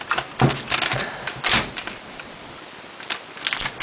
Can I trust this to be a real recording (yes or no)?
yes